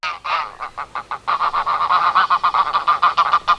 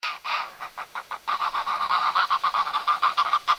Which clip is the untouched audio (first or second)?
first